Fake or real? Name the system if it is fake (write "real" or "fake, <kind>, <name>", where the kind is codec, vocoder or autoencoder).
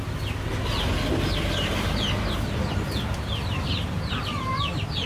real